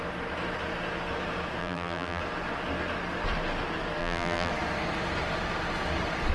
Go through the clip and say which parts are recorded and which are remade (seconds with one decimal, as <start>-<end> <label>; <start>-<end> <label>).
0.0-1.6 recorded; 1.6-2.2 remade; 2.2-4.0 recorded; 4.0-4.5 remade; 4.5-6.3 recorded